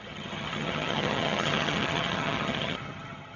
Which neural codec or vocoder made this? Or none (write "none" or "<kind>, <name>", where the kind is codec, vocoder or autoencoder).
vocoder, HiFi-GAN